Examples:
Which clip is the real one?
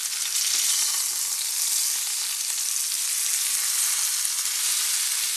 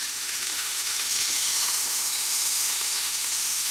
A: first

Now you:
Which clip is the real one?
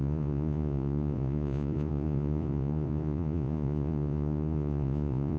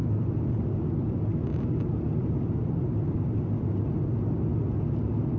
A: second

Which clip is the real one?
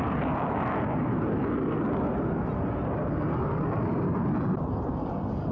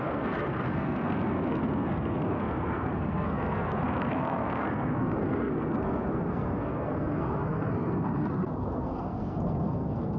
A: first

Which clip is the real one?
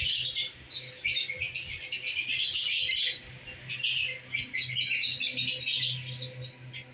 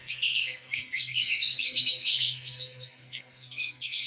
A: first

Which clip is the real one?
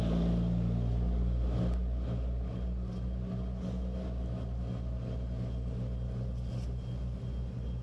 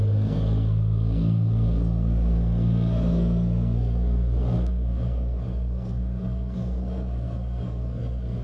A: first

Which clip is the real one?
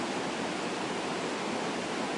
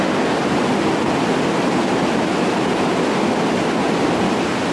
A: second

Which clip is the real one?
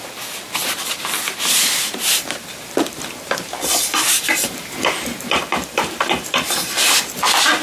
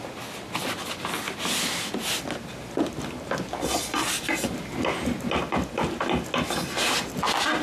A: second